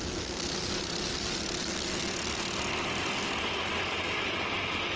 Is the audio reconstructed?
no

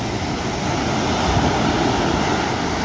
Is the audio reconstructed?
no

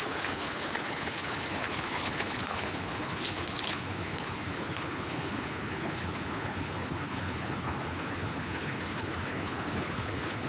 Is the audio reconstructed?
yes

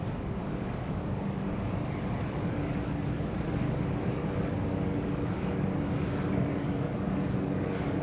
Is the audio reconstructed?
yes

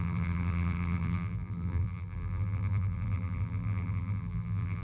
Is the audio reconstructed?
yes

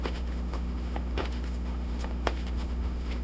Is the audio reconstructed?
yes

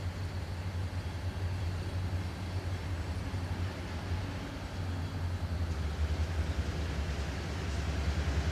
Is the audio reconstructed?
no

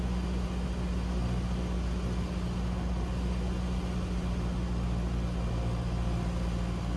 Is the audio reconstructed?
no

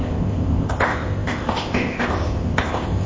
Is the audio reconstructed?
yes